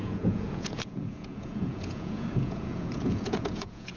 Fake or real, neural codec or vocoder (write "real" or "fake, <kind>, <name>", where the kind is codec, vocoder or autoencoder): fake, vocoder, Vocos